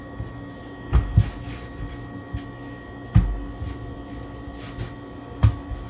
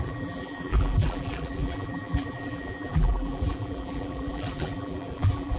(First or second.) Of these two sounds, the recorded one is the first